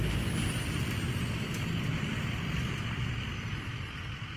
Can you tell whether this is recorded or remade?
recorded